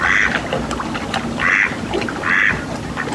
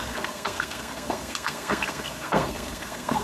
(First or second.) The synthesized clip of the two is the second